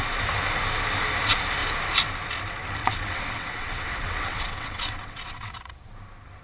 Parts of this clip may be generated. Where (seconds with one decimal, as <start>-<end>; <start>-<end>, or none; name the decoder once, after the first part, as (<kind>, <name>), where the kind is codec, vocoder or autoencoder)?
2.8-5.9 (vocoder, WaveNeXt)